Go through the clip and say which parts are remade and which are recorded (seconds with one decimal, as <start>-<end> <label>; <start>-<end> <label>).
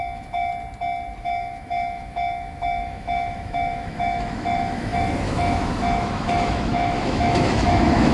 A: 0.0-0.5 remade; 0.5-1.2 recorded; 1.2-8.1 remade